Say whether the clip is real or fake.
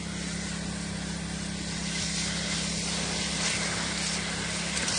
real